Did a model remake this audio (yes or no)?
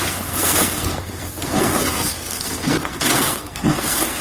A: yes